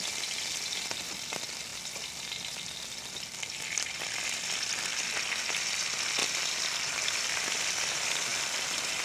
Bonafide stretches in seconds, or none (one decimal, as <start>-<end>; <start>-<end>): 0.0-6.2; 7.4-9.0